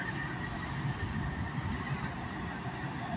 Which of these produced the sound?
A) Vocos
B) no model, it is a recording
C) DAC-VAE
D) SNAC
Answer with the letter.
B